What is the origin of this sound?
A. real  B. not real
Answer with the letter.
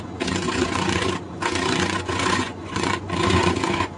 B